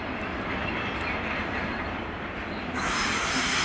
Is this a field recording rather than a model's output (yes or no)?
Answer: yes